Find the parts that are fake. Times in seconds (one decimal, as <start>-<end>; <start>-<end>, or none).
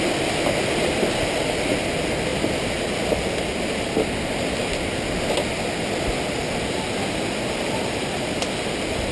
2.3-3.2; 7.6-9.1